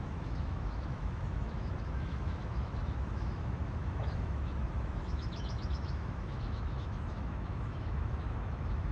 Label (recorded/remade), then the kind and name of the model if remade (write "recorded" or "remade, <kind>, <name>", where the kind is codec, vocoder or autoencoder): remade, autoencoder, DAC-VAE